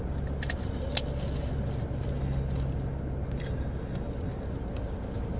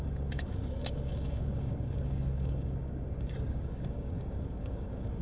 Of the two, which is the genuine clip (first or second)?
first